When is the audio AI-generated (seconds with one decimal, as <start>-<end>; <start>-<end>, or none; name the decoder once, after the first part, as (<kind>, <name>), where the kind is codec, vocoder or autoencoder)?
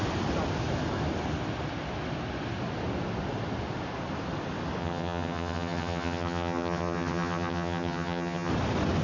4.8-8.5 (vocoder, HiFi-GAN)